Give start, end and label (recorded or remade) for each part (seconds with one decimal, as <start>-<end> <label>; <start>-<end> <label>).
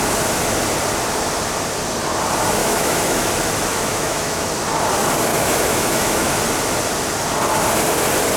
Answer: 0.0-2.6 recorded; 2.6-3.3 remade; 3.3-3.7 recorded; 3.7-4.5 remade; 4.5-5.3 recorded; 5.3-6.4 remade; 6.4-8.4 recorded